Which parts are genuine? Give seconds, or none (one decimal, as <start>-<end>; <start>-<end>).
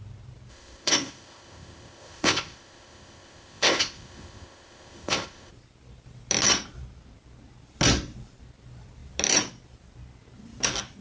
0.0-0.5; 5.5-11.0